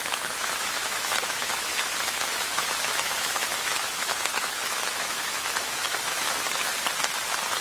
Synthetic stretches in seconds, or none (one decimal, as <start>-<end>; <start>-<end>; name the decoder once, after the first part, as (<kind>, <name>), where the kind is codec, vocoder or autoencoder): 0.0-6.7 (autoencoder, DAC-VAE)